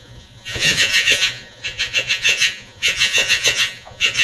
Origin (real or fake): fake